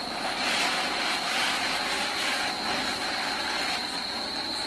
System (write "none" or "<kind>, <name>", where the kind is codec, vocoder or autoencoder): none